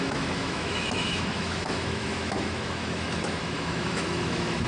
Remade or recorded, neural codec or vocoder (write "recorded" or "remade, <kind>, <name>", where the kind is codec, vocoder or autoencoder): remade, autoencoder, DAC-VAE